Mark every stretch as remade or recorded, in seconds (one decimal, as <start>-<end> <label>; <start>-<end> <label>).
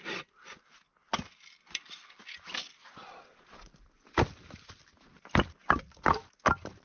0.0-2.8 recorded; 2.8-3.7 remade; 3.7-6.8 recorded